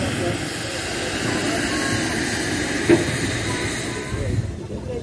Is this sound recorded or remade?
recorded